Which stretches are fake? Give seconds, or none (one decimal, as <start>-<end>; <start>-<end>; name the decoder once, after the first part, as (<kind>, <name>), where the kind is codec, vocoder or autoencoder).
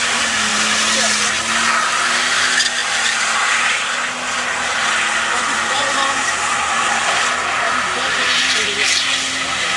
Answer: none